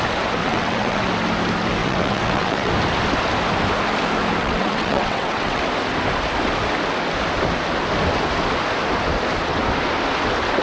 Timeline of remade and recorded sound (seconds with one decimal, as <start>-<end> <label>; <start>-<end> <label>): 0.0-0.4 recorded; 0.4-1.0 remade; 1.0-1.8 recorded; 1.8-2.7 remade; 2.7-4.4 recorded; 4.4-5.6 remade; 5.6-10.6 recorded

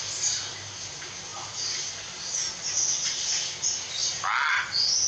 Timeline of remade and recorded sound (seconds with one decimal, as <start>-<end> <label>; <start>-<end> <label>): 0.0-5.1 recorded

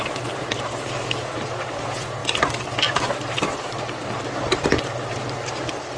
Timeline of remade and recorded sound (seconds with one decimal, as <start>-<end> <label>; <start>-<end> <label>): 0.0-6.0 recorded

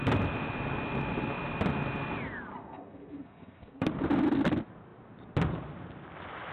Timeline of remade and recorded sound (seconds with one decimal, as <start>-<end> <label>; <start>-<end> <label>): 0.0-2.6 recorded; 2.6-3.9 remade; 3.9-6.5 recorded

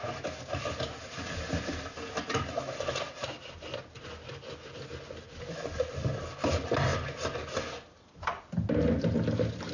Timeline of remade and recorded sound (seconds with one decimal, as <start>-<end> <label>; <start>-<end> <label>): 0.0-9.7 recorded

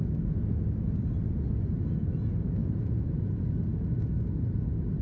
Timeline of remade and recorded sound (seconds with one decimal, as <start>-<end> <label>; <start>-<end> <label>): 0.0-2.6 recorded; 2.6-3.3 remade; 3.3-5.0 recorded

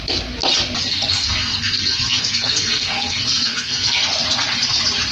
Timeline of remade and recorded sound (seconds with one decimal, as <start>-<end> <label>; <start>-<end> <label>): 0.0-0.9 recorded; 0.9-4.0 remade; 4.0-5.1 recorded